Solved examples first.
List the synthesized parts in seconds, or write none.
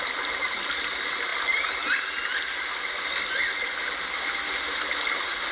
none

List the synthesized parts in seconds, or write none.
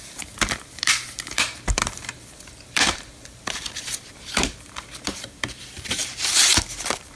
0.0-7.2 (vocoder, BigVGAN v2)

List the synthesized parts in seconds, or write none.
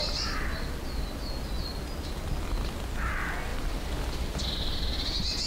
0.0-0.7 (vocoder, BigVGAN v2); 3.5-4.7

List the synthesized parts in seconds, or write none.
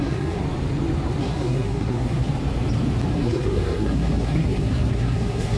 0.0-0.4 (codec, SNAC); 1.2-2.3; 3.1-5.6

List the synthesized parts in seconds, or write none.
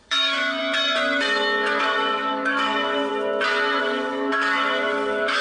0.0-0.6 (codec, DAC); 1.8-3.1; 3.8-5.4